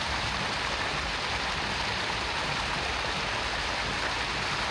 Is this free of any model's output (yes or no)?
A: yes